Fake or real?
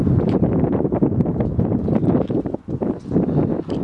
real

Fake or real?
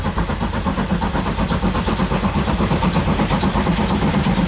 real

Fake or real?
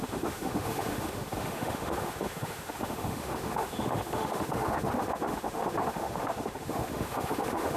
fake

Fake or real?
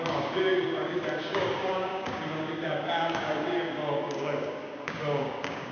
fake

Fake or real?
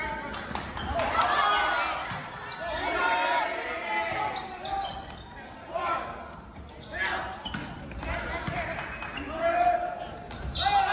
real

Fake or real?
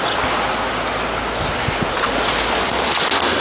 real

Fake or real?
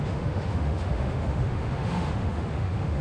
fake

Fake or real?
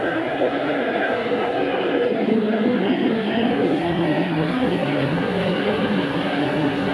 fake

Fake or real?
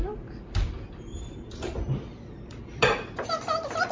real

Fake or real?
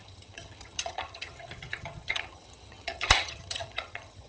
fake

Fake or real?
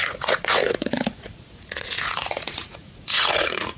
fake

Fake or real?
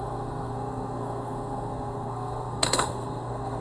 fake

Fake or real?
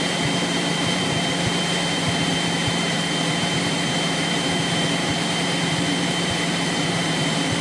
fake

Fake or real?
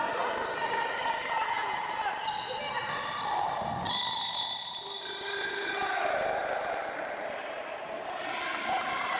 real